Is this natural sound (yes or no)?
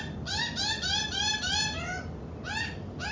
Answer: yes